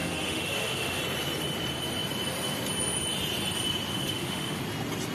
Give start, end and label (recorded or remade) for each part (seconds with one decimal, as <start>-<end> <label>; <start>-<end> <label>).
0.0-1.0 remade; 1.0-3.9 recorded; 3.9-4.6 remade; 4.6-5.1 recorded